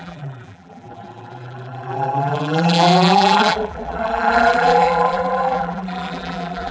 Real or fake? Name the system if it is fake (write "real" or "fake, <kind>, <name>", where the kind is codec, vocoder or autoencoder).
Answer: fake, vocoder, BigVGAN v2